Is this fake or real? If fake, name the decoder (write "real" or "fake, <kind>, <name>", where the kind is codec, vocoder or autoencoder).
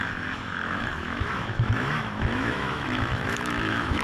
fake, autoencoder, DAC-VAE